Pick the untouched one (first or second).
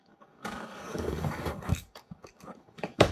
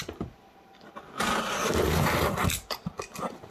second